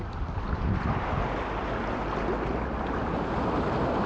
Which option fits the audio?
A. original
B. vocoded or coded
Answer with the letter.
A